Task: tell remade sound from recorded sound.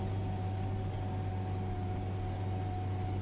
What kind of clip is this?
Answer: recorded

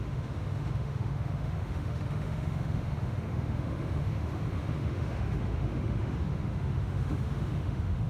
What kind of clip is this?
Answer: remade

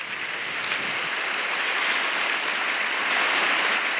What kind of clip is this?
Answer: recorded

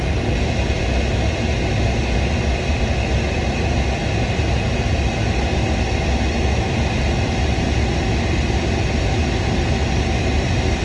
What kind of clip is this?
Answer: recorded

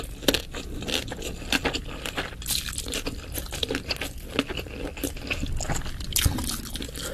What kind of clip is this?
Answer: recorded